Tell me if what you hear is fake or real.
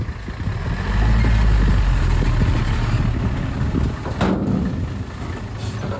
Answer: real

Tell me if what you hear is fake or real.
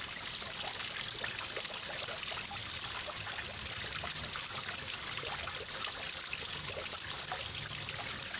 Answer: real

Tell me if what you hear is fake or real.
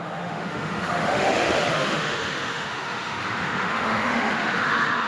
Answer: fake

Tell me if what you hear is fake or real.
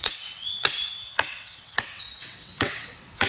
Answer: fake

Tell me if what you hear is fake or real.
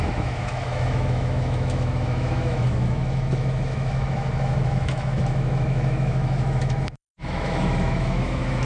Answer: fake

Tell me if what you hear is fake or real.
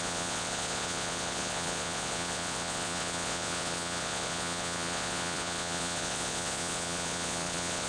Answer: fake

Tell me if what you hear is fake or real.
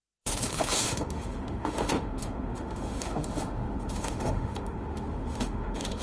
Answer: fake